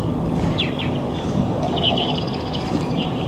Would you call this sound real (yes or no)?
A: no